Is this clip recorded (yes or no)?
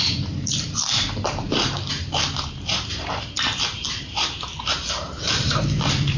no